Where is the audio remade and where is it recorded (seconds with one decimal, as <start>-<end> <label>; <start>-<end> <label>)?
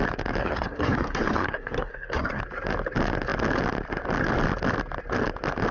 0.0-0.4 recorded; 0.4-2.4 remade; 2.4-5.7 recorded